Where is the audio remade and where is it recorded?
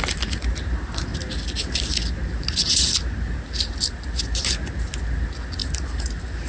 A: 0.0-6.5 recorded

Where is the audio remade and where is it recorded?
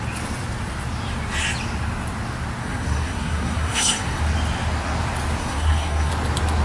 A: 0.0-2.6 recorded; 2.6-4.2 remade; 4.2-5.4 recorded; 5.4-6.1 remade; 6.1-6.6 recorded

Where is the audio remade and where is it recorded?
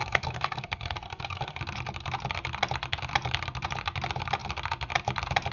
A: 0.0-1.6 remade; 1.6-5.5 recorded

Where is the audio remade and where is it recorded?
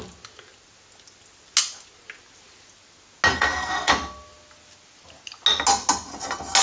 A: 0.0-3.3 recorded; 3.3-3.9 remade; 3.9-6.6 recorded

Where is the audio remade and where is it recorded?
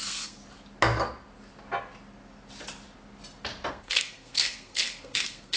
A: 0.0-0.4 remade; 0.4-3.7 recorded; 3.7-5.6 remade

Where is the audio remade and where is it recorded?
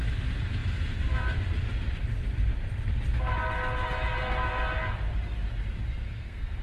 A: 0.0-6.0 recorded; 6.0-6.6 remade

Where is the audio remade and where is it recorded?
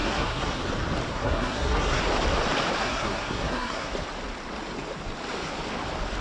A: 0.0-0.6 remade; 0.6-1.1 recorded; 1.1-2.0 remade; 2.0-2.8 recorded; 2.8-3.9 remade; 3.9-6.2 recorded